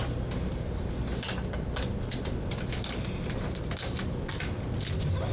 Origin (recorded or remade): recorded